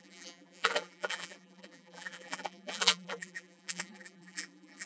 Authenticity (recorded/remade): remade